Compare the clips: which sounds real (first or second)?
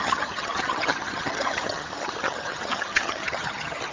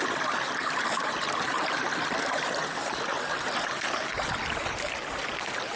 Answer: second